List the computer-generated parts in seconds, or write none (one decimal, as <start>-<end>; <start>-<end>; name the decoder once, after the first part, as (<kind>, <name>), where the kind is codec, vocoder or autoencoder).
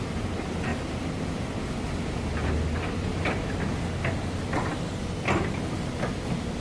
none